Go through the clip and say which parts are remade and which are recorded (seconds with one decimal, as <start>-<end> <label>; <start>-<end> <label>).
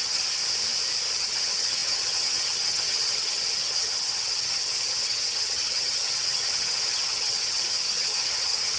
0.0-0.4 remade; 0.4-1.1 recorded; 1.1-8.8 remade